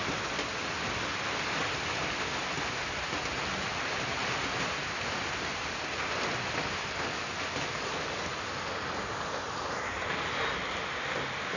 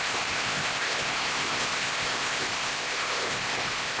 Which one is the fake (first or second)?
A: second